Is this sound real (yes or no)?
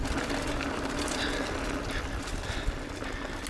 yes